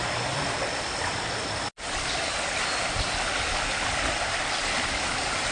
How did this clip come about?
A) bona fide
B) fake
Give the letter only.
A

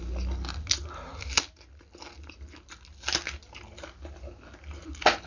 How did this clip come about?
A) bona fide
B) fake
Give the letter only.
A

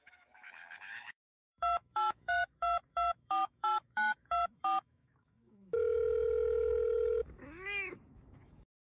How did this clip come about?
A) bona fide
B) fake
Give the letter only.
B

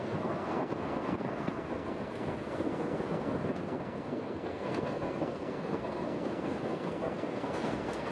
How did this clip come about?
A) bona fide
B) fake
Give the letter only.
B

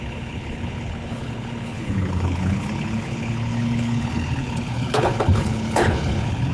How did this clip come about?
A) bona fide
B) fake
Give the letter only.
B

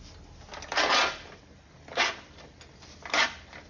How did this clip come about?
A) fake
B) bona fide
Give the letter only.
B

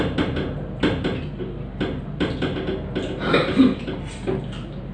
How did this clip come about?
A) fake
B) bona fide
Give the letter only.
B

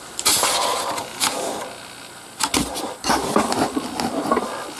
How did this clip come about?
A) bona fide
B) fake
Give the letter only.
A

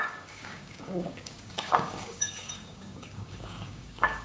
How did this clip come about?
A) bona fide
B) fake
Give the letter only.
B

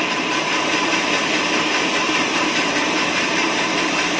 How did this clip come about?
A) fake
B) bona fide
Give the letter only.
A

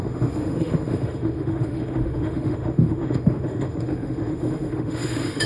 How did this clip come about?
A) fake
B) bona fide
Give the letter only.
A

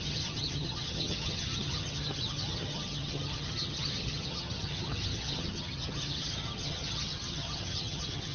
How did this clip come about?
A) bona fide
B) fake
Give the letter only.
B